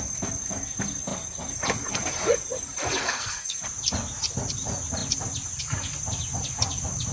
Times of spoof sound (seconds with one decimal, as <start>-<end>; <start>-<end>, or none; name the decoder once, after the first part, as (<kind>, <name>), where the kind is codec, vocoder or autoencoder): 3.0-3.6 (codec, SNAC)

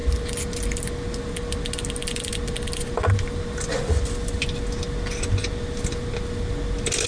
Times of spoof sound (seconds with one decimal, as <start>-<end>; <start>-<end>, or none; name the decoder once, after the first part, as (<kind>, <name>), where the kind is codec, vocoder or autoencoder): none

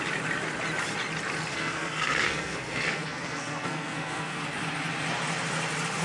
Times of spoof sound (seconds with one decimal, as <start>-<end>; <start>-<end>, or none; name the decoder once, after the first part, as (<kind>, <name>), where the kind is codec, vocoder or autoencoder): 1.5-4.4 (codec, SNAC)

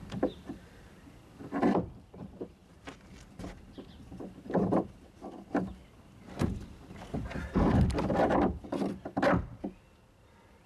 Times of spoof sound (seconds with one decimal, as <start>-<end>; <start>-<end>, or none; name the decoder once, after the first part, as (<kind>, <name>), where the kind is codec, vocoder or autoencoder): none

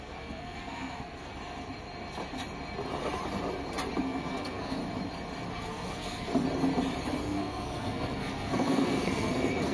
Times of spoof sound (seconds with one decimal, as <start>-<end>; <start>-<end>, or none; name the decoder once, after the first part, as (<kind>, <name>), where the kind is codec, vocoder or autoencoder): 0.0-1.3 (codec, SNAC); 4.0-4.8; 5.5-6.3; 7.2-9.7